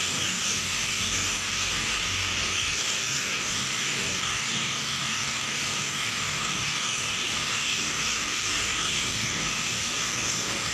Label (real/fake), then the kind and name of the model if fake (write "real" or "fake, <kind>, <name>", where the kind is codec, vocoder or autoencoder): fake, codec, DAC